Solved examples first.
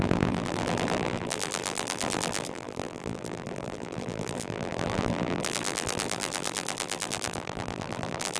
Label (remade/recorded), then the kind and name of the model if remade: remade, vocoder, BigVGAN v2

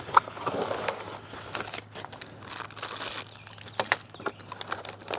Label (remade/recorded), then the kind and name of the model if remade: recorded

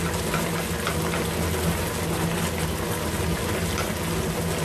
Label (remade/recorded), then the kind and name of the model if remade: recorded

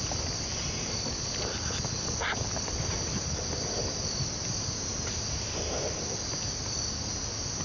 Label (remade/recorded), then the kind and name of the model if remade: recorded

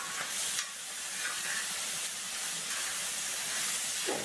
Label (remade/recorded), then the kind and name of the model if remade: recorded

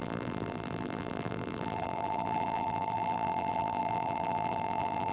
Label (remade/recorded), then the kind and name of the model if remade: remade, vocoder, BigVGAN v2